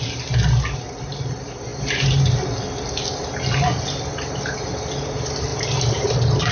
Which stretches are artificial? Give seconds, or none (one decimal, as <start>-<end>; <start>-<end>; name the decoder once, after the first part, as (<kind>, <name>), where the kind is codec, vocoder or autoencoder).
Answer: 5.5-6.5 (vocoder, BigVGAN v2)